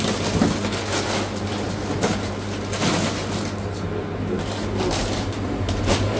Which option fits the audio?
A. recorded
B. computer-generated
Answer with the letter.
A